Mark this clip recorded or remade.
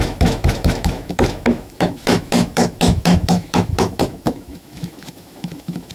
remade